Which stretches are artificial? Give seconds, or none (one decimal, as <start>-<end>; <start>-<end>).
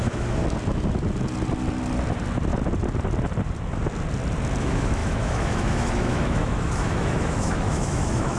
0.0-0.4; 4.6-8.4